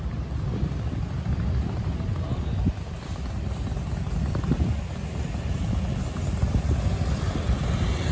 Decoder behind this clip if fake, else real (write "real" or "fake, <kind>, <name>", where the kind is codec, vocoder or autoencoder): real